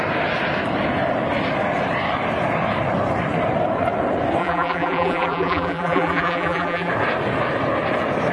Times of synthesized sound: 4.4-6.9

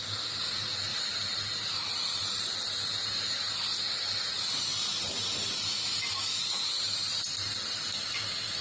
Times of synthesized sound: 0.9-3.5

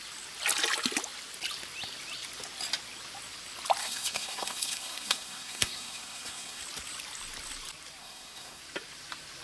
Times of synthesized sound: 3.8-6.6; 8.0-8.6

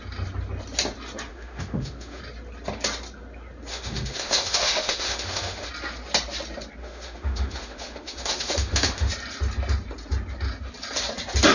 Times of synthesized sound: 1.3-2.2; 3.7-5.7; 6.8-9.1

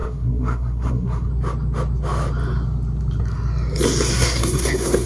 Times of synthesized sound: 0.0-1.3; 4.1-5.1

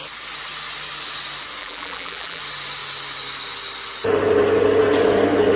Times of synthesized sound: 1.6-2.4

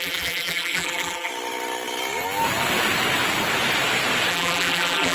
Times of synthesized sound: 0.0-1.3; 4.3-5.1

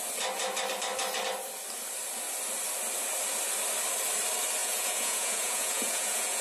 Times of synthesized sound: 4.6-6.4